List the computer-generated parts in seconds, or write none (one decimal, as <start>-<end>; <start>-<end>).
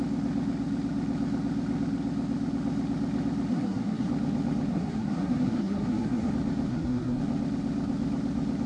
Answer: 3.5-4.1; 4.7-6.3; 6.7-7.2